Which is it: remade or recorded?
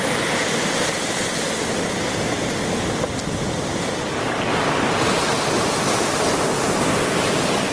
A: recorded